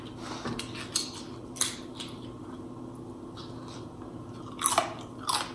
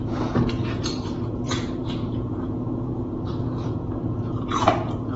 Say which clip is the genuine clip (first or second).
first